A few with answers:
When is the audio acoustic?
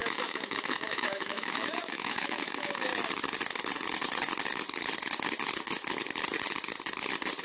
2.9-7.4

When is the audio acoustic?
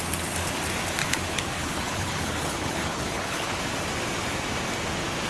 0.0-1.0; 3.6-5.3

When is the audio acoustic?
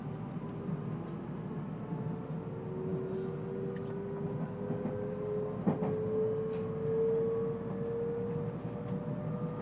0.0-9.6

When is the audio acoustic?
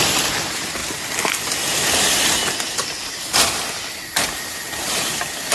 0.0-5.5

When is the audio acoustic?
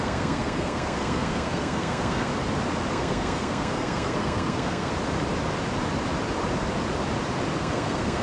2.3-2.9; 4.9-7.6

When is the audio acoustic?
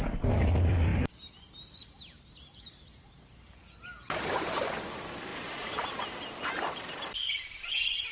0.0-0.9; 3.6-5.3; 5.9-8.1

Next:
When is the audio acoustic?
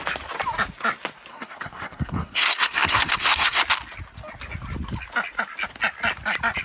0.0-1.3; 3.6-6.6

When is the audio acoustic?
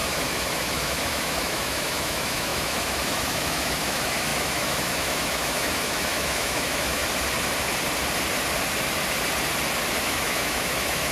7.0-10.0